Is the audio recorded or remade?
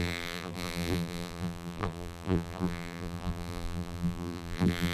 remade